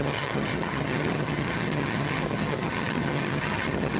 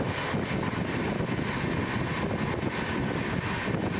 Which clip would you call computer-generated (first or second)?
first